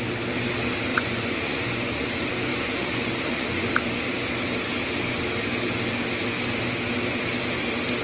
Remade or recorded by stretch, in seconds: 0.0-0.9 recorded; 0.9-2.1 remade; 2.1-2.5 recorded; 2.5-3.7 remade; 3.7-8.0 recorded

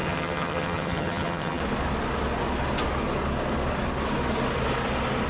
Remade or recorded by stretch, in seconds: 0.0-1.6 remade; 1.6-5.3 recorded

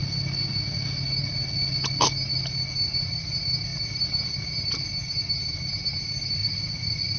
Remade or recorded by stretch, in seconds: 0.0-6.4 recorded; 6.4-7.2 remade

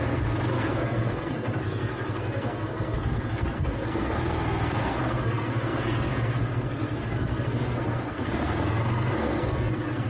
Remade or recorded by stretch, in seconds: 0.0-10.1 remade

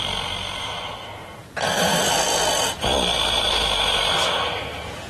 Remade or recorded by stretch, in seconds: 0.0-5.1 recorded